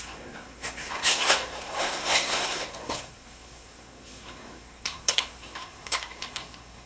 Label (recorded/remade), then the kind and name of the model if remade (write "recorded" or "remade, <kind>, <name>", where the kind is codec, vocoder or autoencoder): remade, codec, SNAC